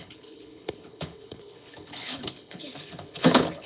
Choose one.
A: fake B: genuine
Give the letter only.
A